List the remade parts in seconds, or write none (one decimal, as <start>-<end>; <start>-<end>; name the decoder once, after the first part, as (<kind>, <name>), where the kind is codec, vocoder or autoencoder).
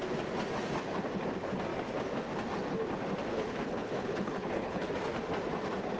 3.3-4.9 (codec, HILCodec)